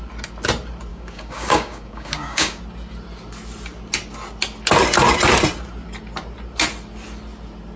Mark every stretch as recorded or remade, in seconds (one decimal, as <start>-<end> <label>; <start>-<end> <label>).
0.0-0.9 recorded; 0.9-2.6 remade; 2.6-7.8 recorded